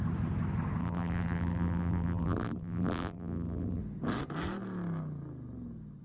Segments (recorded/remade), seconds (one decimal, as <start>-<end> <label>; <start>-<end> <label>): 0.0-0.8 recorded; 0.8-3.8 remade; 3.8-6.0 recorded